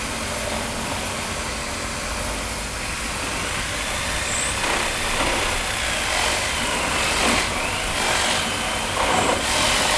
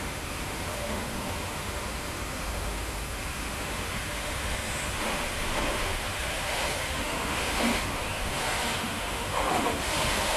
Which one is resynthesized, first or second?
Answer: second